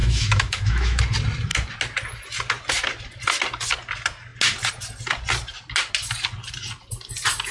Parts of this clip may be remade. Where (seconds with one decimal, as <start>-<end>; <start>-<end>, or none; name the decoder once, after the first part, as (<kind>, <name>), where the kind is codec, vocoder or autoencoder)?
0.0-1.0 (autoencoder, DAC-VAE)